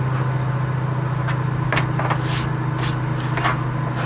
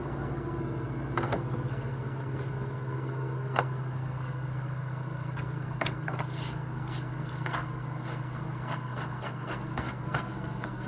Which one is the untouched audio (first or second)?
first